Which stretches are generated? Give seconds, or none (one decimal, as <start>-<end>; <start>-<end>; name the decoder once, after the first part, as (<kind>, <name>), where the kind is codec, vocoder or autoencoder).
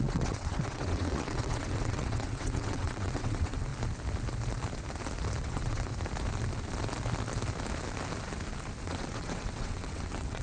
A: 0.0-3.7 (vocoder, WaveNeXt); 5.4-5.9; 8.8-10.4